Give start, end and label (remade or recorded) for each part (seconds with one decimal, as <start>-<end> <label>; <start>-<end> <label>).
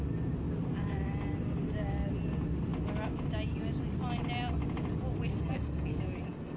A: 0.0-5.3 recorded; 5.3-6.0 remade; 6.0-6.6 recorded